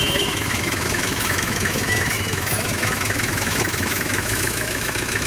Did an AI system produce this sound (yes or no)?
yes